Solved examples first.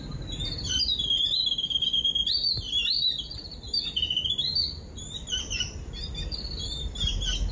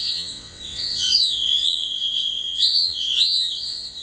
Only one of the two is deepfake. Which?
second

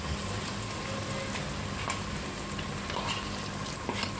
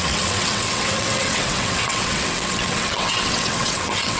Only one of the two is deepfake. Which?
second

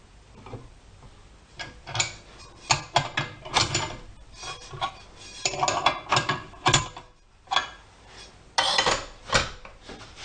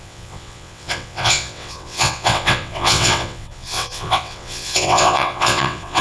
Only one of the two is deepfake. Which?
second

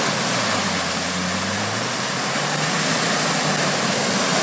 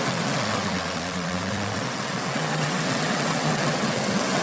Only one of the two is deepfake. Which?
second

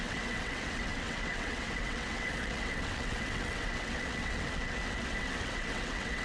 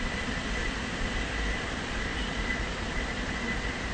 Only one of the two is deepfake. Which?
first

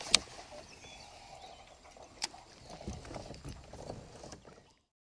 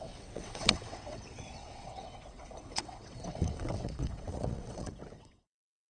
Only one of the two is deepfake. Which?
second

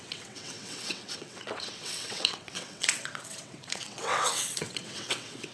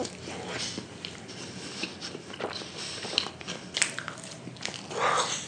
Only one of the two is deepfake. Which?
first